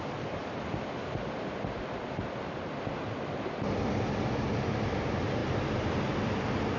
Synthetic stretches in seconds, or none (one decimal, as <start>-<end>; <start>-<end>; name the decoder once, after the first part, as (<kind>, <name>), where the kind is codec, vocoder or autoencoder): none

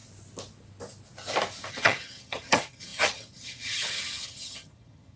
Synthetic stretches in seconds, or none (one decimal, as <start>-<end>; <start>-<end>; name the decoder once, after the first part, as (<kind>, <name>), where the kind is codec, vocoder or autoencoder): 1.7-5.2 (vocoder, HiFi-GAN)

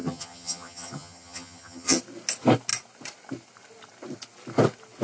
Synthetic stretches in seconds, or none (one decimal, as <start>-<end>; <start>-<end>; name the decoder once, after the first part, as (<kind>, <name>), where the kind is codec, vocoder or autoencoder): 0.0-2.0 (vocoder, HiFi-GAN)

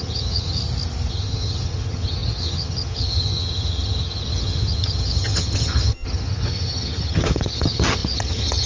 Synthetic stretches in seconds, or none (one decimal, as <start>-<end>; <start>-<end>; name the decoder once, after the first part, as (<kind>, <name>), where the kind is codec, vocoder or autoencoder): 0.0-0.6 (vocoder, HiFi-GAN); 1.1-8.7

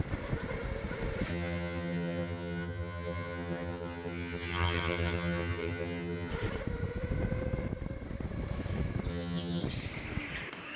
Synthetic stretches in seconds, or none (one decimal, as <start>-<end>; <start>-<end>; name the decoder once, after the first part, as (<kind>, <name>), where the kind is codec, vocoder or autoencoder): 1.3-6.3 (vocoder, HiFi-GAN); 9.1-9.6

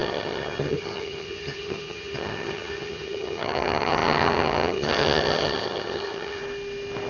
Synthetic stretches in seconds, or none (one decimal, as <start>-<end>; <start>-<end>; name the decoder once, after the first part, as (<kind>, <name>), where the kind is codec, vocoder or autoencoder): 0.0-6.4 (vocoder, HiFi-GAN)